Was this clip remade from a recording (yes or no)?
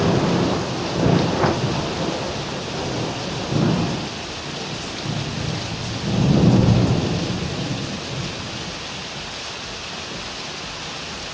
no